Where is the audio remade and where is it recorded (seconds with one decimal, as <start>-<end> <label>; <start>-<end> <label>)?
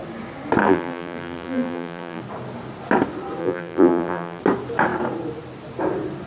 0.0-0.6 recorded; 0.6-2.2 remade; 2.2-3.4 recorded; 3.4-4.4 remade; 4.4-6.3 recorded